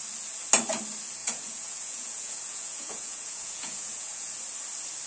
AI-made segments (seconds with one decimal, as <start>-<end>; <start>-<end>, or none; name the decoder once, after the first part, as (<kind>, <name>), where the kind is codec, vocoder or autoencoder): 1.2-4.3 (vocoder, Vocos)